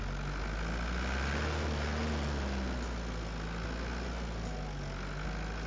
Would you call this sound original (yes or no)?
yes